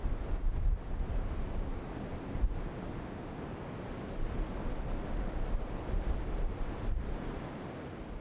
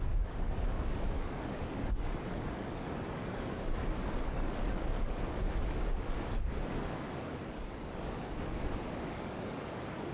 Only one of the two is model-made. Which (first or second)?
second